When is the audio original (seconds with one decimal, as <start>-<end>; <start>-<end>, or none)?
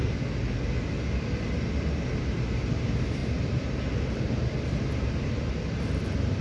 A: 0.0-3.2; 5.3-6.4